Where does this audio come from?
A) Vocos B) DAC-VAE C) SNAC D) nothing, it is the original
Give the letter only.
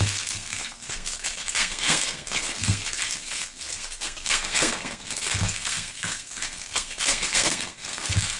C